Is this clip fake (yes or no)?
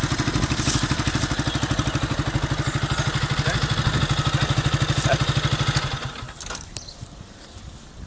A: no